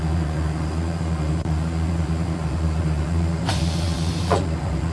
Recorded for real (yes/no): no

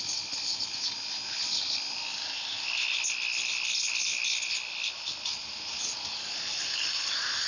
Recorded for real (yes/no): yes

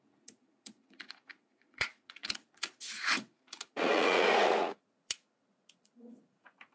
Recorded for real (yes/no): no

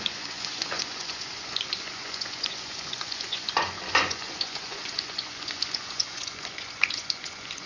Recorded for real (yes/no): no